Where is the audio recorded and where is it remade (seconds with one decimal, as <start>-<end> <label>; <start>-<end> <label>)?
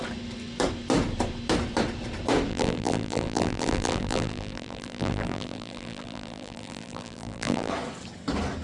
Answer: 0.0-2.5 recorded; 2.5-7.7 remade; 7.7-8.6 recorded